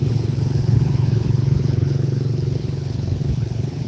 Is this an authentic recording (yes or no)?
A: no